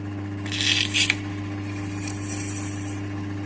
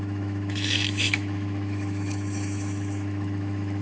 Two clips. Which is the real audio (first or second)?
first